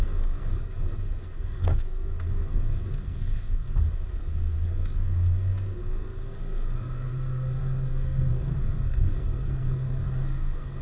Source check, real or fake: fake